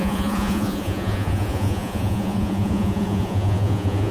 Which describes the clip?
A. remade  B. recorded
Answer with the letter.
A